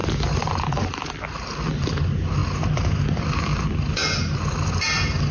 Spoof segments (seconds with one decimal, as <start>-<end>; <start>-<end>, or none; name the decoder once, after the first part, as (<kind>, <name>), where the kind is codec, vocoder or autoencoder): none